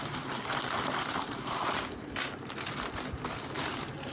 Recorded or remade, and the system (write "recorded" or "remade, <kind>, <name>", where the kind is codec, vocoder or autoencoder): remade, vocoder, BigVGAN v2